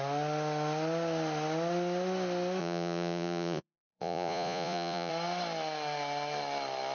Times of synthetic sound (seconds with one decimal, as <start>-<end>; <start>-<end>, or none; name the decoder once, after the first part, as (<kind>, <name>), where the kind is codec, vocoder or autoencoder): 2.6-5.1 (vocoder, Vocos)